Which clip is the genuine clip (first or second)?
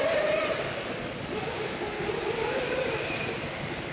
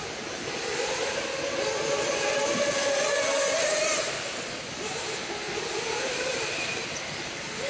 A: second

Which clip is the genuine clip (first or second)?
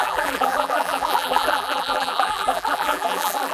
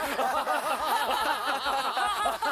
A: second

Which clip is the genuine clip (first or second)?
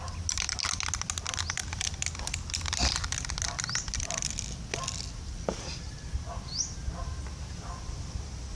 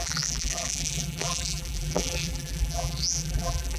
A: first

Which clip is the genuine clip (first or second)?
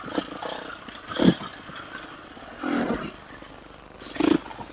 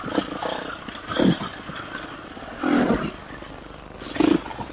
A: first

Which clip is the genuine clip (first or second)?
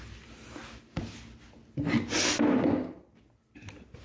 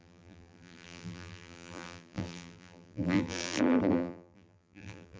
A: first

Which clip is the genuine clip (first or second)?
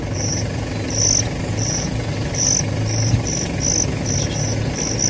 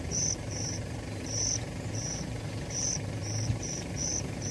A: first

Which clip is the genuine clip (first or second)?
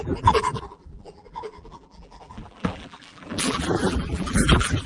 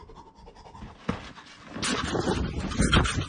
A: second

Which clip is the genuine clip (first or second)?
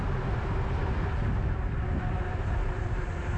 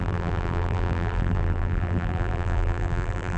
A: first